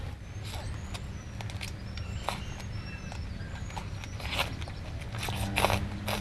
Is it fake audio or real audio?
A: real